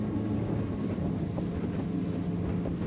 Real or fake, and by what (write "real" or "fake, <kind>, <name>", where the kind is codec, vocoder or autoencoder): real